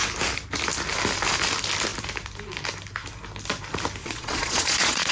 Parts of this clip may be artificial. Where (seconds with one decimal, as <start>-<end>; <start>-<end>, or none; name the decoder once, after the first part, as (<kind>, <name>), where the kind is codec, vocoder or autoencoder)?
4.0-5.1 (vocoder, Vocos)